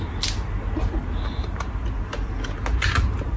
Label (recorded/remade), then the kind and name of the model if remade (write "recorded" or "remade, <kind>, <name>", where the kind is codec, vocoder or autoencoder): recorded